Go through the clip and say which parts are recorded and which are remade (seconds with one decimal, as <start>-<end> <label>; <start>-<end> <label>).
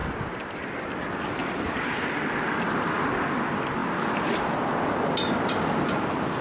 0.0-6.4 recorded